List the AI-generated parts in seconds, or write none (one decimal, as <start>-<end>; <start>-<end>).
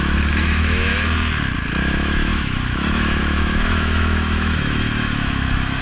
0.0-0.9; 1.9-5.8